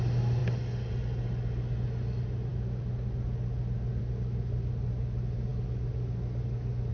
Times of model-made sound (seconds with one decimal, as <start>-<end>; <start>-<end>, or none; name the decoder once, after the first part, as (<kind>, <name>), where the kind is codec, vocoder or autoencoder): none